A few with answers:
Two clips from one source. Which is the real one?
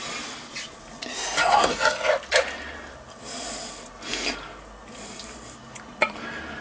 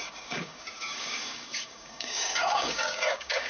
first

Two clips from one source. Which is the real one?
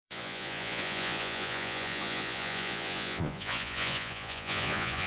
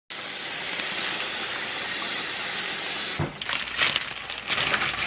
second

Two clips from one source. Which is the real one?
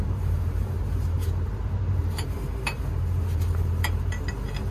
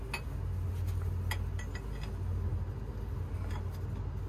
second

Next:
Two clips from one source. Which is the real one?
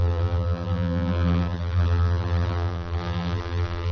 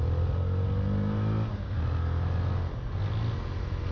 second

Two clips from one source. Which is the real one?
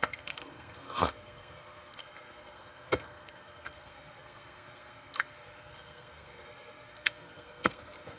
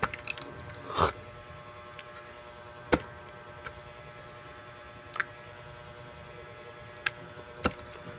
second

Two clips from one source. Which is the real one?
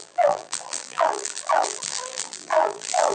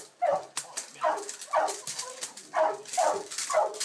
second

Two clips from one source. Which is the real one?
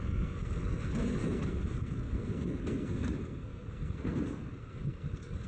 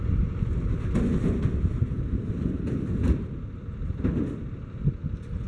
second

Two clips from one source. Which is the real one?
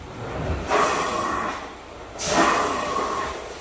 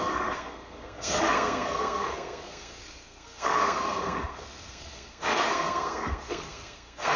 first